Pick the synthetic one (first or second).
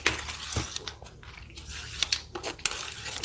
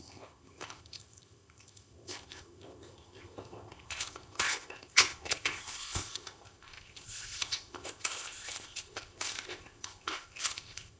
second